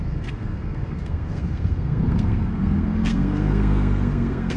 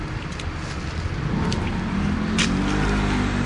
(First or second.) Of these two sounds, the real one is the second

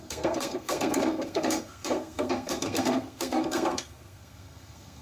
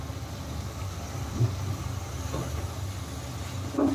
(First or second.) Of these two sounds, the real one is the second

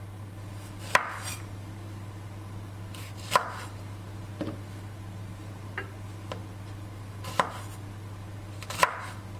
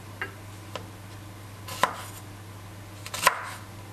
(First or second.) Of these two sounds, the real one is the second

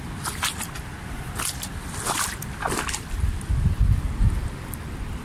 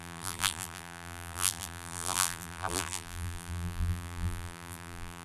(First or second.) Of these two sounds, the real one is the first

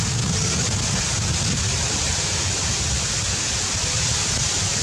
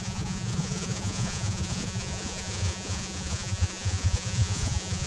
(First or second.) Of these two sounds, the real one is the first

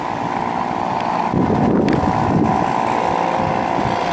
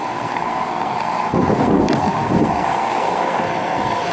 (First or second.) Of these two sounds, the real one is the first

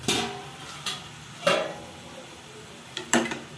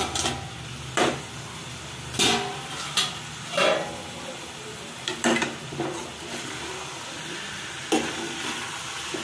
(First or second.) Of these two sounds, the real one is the second